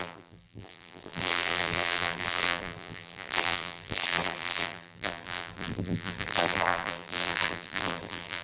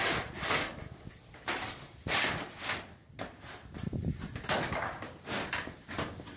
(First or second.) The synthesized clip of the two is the first